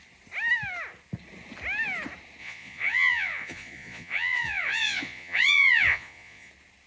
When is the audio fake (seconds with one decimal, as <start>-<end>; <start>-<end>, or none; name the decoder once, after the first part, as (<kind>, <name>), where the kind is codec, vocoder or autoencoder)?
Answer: 2.4-6.5 (vocoder, Vocos)